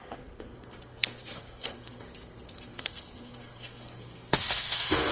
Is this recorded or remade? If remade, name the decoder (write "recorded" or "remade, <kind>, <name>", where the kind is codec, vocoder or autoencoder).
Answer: remade, codec, SNAC